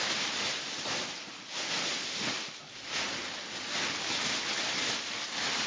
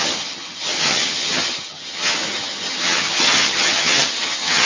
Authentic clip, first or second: first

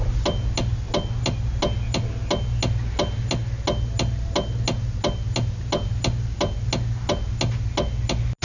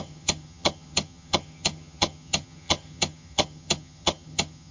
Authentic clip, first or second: first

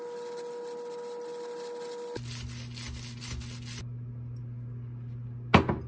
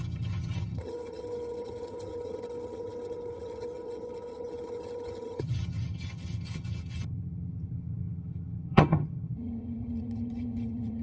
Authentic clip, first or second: first